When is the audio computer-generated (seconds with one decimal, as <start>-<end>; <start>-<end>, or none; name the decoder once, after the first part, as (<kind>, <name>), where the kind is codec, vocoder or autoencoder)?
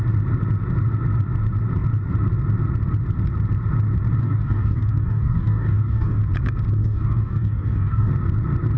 4.2-6.2 (codec, DAC); 6.8-8.1